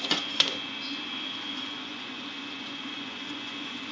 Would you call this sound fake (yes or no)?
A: yes